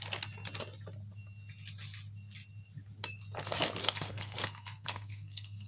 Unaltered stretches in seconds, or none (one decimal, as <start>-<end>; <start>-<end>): 0.0-3.8

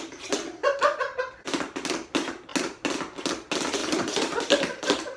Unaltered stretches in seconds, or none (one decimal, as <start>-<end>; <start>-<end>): 0.0-0.6; 1.2-3.8; 4.4-5.2

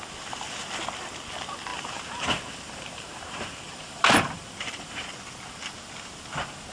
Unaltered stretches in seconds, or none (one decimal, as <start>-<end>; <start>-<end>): 0.0-1.7; 5.1-6.7

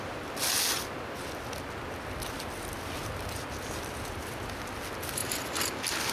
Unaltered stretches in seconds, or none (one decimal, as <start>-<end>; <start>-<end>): 0.0-6.1

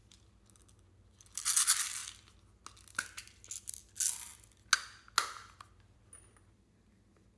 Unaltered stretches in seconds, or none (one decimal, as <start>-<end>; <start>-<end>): 0.0-7.4